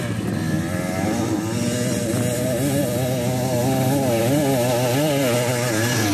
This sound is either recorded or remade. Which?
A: recorded